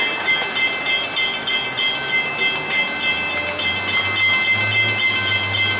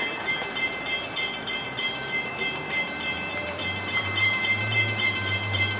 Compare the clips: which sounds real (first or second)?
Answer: first